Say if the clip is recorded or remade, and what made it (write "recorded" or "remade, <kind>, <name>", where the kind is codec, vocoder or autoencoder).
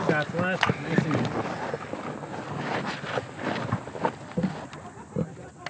recorded